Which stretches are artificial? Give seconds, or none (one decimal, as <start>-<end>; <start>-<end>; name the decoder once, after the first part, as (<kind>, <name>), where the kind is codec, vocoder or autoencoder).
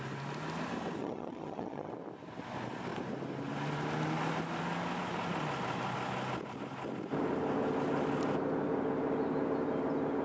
1.0-1.9 (vocoder, HiFi-GAN)